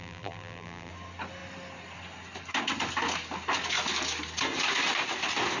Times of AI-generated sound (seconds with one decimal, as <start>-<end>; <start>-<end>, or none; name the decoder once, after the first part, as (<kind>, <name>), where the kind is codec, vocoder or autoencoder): 0.0-0.9 (vocoder, BigVGAN v2)